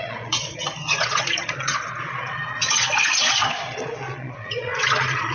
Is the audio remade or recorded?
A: remade